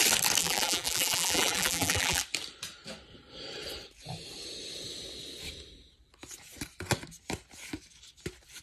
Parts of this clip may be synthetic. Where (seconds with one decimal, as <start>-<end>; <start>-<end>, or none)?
0.4-2.2